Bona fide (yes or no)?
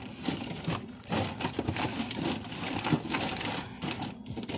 yes